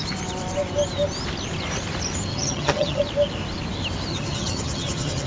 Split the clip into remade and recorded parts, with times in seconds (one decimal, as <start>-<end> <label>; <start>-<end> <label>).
0.0-2.3 recorded; 2.3-3.0 remade; 3.0-4.1 recorded; 4.1-5.3 remade